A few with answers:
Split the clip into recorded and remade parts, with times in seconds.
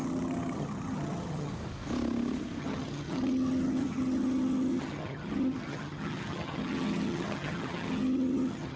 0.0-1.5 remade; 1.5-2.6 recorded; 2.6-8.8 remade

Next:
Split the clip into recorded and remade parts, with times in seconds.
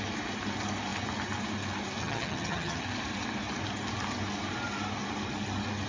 0.0-2.0 recorded; 2.0-2.8 remade; 2.8-5.9 recorded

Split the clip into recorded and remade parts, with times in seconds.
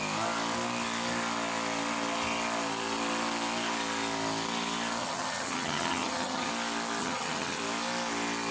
0.0-5.0 recorded; 5.0-6.5 remade; 6.5-7.0 recorded; 7.0-7.6 remade; 7.6-8.5 recorded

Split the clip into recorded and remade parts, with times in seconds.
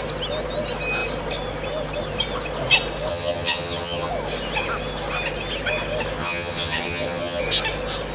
0.0-3.1 recorded; 3.1-4.1 remade; 4.1-6.2 recorded; 6.2-7.4 remade; 7.4-8.1 recorded